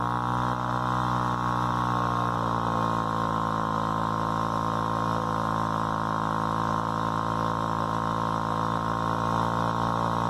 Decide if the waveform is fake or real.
real